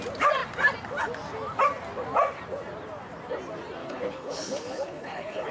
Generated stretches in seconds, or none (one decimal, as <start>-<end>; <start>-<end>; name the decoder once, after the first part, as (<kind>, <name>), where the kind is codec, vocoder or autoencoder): 3.8-5.5 (codec, HILCodec)